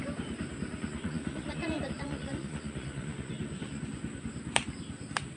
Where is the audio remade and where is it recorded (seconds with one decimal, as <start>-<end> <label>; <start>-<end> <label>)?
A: 0.0-0.7 recorded; 0.7-3.9 remade; 3.9-5.4 recorded